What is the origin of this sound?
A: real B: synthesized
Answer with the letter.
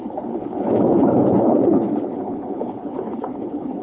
B